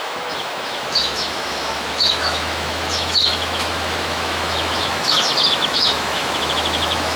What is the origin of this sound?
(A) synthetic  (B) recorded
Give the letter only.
A